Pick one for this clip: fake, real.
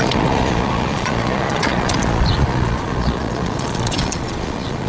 fake